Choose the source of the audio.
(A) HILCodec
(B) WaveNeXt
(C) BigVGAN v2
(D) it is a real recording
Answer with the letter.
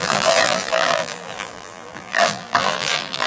C